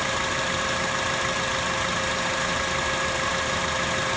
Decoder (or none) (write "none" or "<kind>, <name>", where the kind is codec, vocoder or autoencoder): none